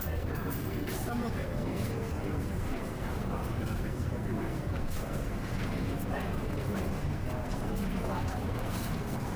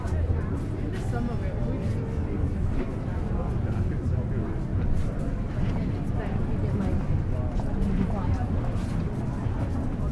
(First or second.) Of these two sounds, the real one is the second